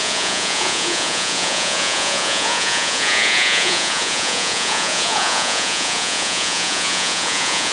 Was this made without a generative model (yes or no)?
no